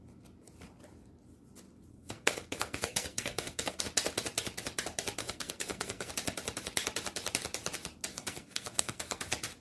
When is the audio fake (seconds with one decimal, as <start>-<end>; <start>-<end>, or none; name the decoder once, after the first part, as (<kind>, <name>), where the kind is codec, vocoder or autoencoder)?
1.9-3.8 (codec, SNAC); 5.2-6.1; 8.1-9.2